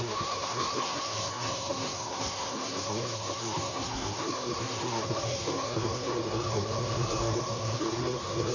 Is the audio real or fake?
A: fake